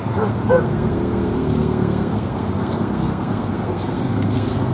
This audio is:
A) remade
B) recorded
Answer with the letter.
A